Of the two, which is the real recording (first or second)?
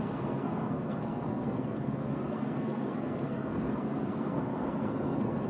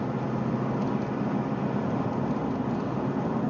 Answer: second